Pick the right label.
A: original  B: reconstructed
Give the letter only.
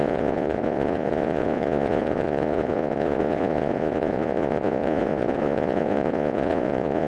B